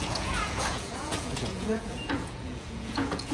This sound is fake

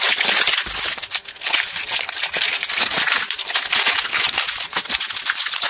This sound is real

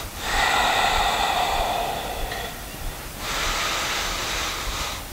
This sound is real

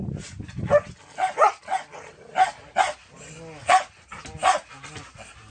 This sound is real